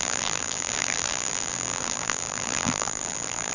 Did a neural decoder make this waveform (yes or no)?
yes